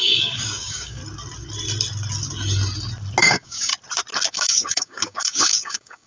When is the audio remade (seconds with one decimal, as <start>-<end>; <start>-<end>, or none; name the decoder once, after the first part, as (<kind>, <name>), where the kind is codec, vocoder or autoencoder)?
0.0-1.0 (codec, DAC); 3.2-3.7; 4.3-6.1